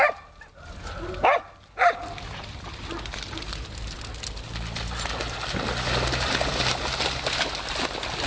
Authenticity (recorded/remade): recorded